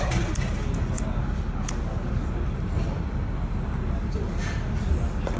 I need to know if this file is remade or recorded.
recorded